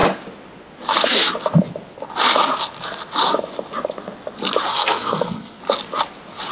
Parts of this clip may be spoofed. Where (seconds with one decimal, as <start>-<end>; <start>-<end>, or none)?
4.7-5.6